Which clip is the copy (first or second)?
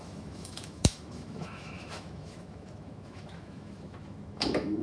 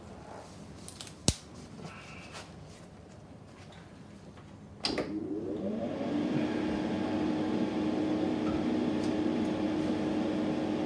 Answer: first